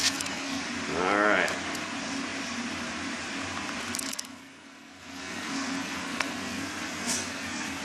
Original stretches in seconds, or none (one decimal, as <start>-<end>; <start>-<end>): 0.6-4.1